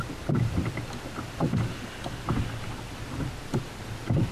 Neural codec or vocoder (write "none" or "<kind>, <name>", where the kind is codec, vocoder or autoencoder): none